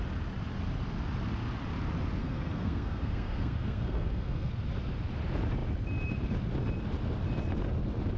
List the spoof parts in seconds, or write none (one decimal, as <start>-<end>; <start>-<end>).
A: 2.2-4.5